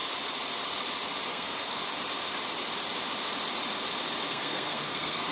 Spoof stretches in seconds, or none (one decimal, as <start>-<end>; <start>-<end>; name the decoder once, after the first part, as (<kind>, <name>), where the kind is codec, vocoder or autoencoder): 1.3-1.8 (codec, SNAC); 4.3-5.3